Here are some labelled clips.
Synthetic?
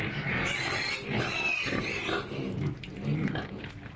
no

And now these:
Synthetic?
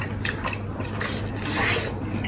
no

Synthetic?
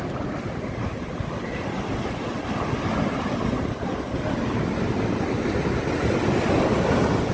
no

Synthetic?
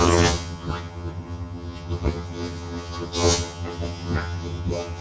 yes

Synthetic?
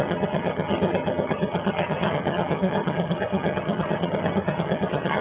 yes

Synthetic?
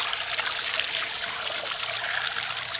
no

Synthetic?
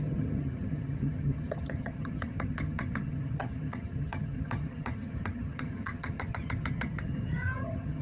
yes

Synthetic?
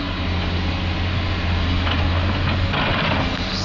no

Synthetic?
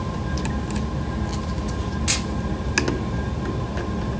no